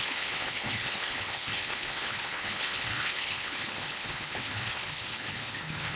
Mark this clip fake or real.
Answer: fake